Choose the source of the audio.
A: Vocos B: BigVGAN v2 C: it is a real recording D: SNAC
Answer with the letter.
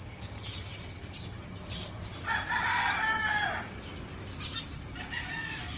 C